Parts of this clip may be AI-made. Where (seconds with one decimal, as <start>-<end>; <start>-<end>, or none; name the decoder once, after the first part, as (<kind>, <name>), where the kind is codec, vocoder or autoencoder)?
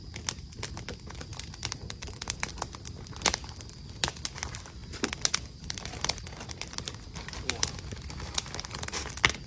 1.3-2.5 (vocoder, BigVGAN v2)